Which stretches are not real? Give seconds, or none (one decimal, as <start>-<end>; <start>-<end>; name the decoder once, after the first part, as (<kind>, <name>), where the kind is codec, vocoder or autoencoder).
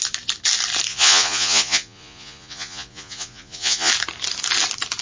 0.9-3.9 (vocoder, Vocos)